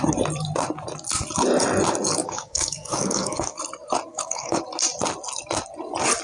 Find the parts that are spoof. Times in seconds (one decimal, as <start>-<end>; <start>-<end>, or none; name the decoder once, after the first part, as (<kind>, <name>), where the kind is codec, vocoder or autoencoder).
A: 2.2-3.6 (codec, DAC); 4.1-4.6